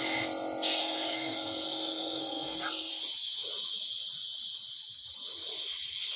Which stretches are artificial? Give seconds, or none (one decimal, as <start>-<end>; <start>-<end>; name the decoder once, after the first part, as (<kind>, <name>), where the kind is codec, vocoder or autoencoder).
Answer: 0.8-2.9 (codec, SNAC)